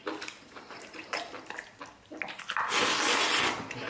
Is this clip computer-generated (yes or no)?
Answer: no